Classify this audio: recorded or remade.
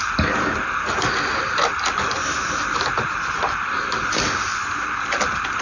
recorded